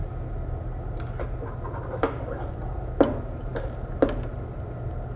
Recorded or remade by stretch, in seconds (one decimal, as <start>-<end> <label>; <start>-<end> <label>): 0.0-5.2 recorded